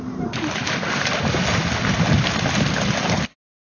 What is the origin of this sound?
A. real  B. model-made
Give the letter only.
A